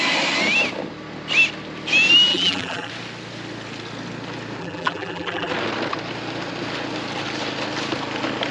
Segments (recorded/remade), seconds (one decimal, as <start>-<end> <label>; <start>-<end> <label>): 0.0-2.3 recorded; 2.3-2.9 remade; 2.9-4.6 recorded; 4.6-5.5 remade; 5.5-8.5 recorded